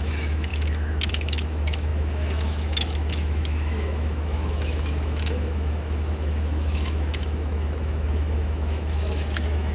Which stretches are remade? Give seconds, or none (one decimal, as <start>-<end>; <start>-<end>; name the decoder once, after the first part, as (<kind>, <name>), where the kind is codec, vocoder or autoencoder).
0.0-9.7 (autoencoder, DAC-VAE)